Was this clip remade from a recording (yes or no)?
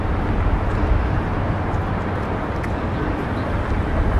no